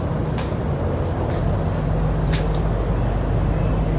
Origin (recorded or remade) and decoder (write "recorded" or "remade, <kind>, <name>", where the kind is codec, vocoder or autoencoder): recorded